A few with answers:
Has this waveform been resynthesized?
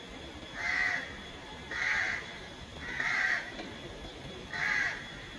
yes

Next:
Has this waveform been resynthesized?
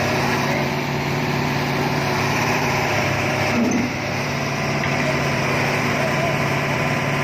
yes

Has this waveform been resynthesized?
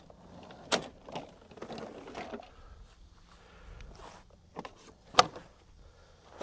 no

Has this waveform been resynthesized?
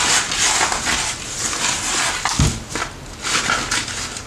no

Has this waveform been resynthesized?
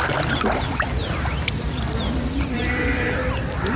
yes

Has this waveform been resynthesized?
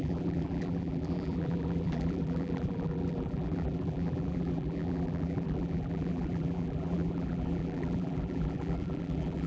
yes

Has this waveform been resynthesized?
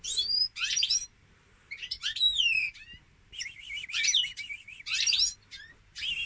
yes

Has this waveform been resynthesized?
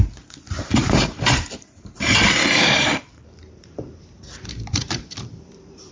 yes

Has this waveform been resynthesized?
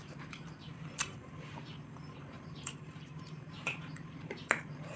yes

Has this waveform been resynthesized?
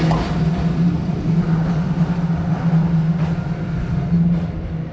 no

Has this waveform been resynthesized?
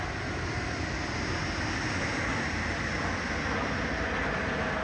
no